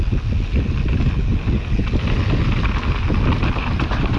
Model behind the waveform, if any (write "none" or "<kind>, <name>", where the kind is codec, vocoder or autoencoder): none